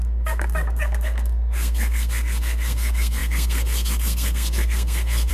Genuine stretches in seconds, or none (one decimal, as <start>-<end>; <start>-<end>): none

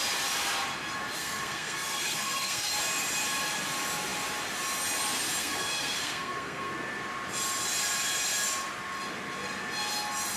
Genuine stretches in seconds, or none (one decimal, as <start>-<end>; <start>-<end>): 0.0-1.2; 2.7-5.4; 6.7-10.4

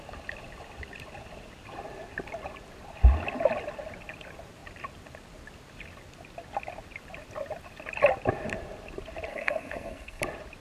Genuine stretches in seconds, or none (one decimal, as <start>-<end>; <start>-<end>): 0.0-9.3; 10.2-10.6

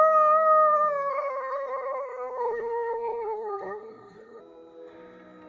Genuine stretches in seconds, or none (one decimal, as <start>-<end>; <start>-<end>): 0.0-1.1; 4.4-5.5